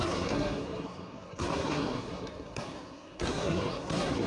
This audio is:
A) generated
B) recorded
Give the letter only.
A